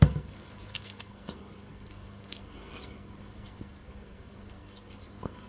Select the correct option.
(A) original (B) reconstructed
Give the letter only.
B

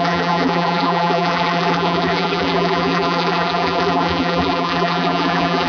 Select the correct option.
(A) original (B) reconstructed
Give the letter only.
B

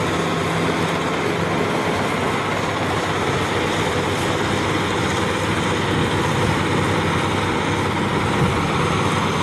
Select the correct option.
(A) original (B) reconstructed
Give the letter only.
A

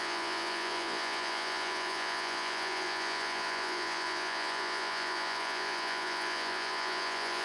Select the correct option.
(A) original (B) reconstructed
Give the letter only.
B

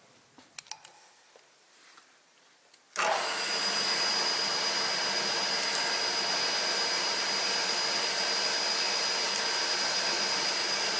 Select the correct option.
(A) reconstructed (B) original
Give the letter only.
B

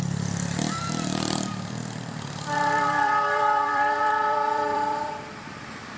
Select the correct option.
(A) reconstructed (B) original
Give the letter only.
A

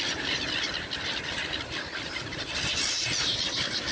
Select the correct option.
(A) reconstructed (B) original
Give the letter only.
B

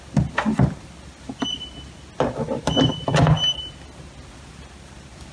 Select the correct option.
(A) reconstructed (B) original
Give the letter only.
B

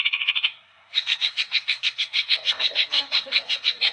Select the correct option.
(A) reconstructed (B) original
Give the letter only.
A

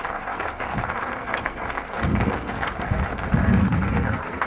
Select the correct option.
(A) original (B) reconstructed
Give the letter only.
B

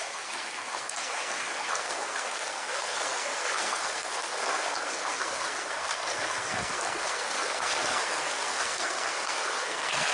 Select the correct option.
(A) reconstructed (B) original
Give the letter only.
A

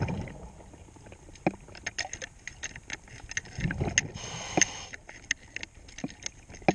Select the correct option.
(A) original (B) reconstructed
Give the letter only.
A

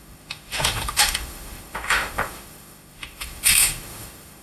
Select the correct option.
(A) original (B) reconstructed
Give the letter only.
B